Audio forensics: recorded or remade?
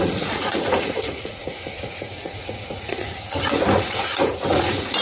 remade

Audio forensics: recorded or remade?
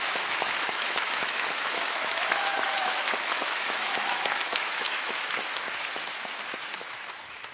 remade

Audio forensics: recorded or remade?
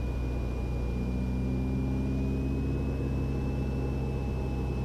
recorded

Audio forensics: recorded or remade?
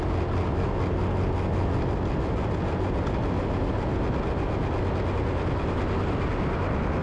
recorded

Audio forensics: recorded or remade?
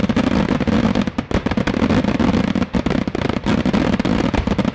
recorded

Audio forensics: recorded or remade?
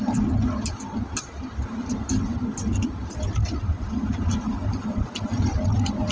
recorded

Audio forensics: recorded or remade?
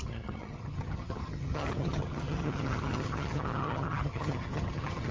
remade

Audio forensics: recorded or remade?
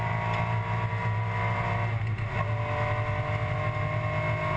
recorded